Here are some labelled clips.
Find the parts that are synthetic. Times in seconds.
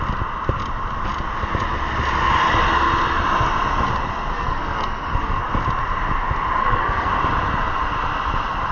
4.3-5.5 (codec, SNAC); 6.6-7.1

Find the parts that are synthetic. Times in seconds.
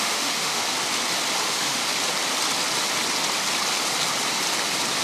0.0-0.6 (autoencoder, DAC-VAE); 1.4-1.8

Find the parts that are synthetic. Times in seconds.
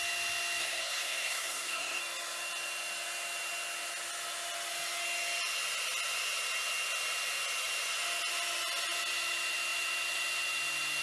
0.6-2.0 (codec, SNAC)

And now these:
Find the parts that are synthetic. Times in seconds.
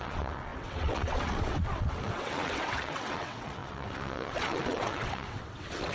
0.0-5.9 (vocoder, WaveNeXt)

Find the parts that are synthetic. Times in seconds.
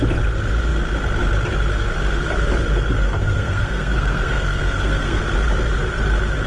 3.0-5.2 (codec, SNAC)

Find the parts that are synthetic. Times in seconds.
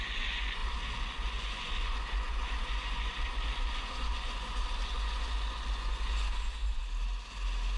0.0-6.8 (vocoder, Vocos)